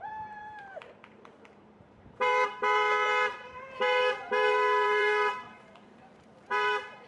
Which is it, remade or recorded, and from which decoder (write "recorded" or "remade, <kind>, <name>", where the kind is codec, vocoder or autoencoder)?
remade, vocoder, BigVGAN v2